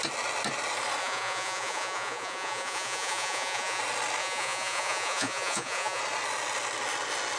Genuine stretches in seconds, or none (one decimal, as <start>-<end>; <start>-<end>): 0.0-1.0; 3.8-4.2; 6.0-7.4